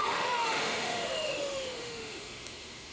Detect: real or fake fake